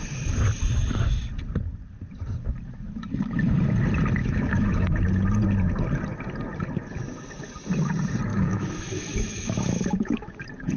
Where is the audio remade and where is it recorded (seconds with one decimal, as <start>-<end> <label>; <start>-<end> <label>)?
0.0-4.2 recorded; 4.2-5.0 remade; 5.0-8.3 recorded; 8.3-10.4 remade; 10.4-10.8 recorded